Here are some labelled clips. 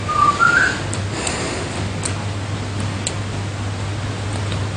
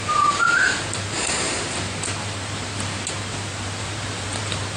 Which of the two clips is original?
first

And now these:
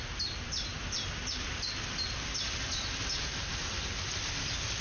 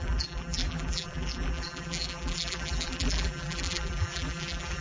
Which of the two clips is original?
first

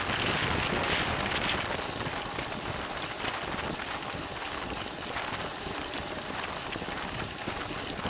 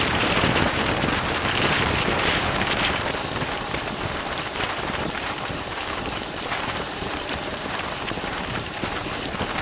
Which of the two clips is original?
first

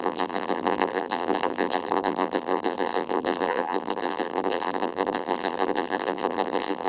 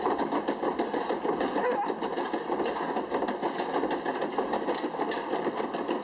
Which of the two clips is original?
second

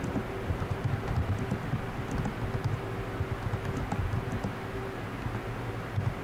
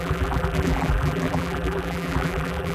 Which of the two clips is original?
first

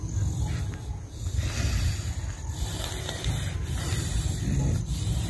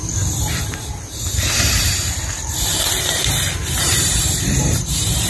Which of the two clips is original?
first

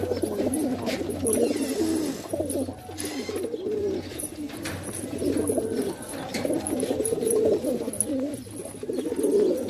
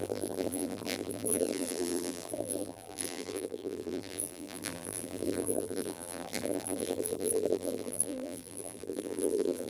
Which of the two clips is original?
first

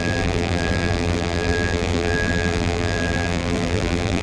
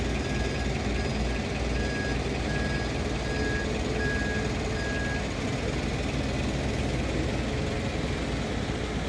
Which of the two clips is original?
second